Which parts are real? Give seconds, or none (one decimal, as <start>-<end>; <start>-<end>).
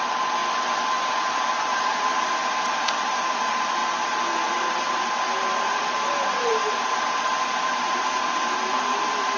0.4-1.1; 3.8-4.7